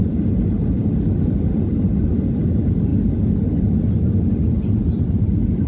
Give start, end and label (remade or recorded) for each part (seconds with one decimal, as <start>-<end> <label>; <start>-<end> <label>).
0.0-5.7 recorded